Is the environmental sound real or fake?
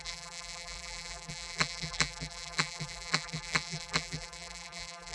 fake